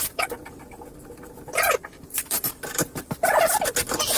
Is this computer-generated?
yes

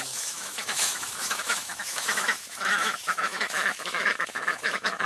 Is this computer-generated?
yes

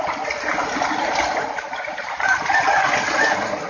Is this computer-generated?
no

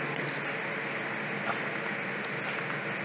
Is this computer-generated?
no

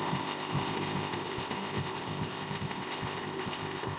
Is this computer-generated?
yes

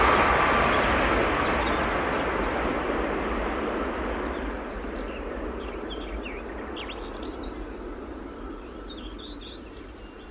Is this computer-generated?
no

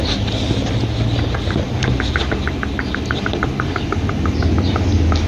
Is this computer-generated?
no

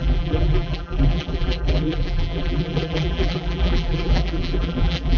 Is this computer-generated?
yes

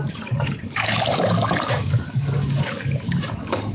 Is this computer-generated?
yes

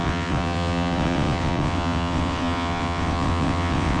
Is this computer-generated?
yes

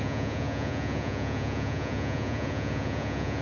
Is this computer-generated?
yes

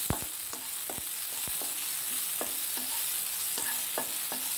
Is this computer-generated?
no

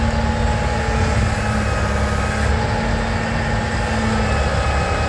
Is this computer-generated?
no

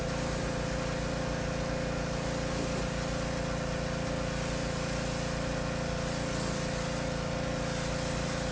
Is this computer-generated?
no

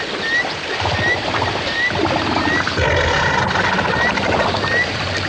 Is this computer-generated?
no